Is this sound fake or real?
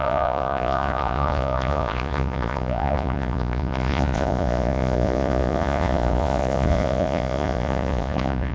fake